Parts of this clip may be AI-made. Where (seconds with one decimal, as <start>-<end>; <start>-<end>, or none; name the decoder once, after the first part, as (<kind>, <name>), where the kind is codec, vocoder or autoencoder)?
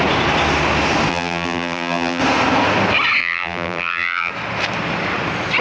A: 1.1-2.2 (vocoder, BigVGAN v2); 3.2-4.3